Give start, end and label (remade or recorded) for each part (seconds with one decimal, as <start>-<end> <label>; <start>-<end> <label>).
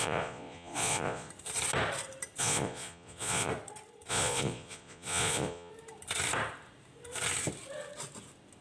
0.0-1.3 remade; 1.3-2.4 recorded; 2.4-3.5 remade; 3.5-4.1 recorded; 4.1-5.7 remade; 5.7-8.6 recorded